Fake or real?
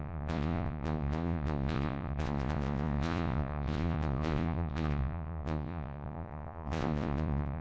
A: fake